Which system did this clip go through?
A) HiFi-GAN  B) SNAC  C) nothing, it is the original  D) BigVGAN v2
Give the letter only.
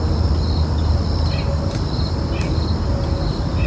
C